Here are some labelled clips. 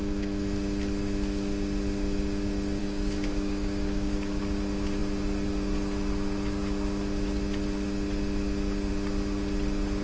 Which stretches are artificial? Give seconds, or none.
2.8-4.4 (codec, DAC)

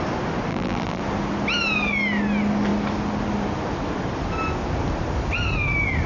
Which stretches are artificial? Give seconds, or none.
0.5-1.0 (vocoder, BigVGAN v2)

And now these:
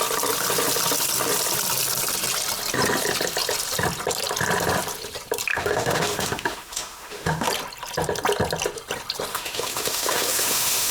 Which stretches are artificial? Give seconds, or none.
5.5-7.5 (autoencoder, DAC-VAE); 9.3-10.9